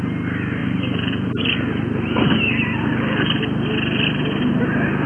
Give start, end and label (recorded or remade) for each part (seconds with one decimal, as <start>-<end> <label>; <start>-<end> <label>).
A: 0.0-0.6 recorded; 0.6-3.4 remade; 3.4-5.1 recorded